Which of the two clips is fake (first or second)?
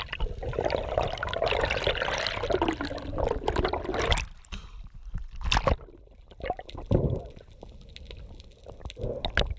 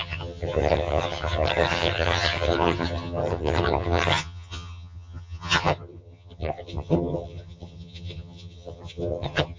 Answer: second